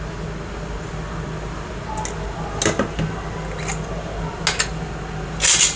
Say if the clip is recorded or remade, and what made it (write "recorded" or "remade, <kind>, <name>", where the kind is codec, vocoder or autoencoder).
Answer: recorded